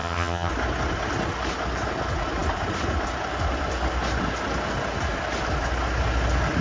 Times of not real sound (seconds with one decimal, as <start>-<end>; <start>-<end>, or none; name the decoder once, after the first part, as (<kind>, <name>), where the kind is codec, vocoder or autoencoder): 0.0-0.5 (vocoder, HiFi-GAN)